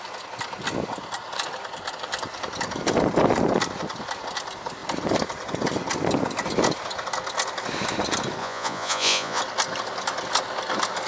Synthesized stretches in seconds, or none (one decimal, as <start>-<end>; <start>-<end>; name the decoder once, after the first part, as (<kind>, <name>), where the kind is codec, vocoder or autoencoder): 8.4-9.4 (vocoder, Vocos)